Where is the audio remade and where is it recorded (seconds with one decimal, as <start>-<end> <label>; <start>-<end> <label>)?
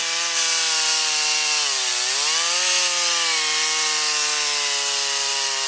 0.0-5.7 recorded